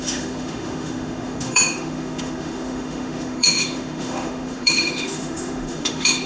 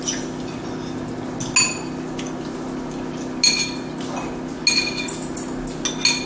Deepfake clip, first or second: first